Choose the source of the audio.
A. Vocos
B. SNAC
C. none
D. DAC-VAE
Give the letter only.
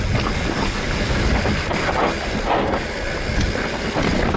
C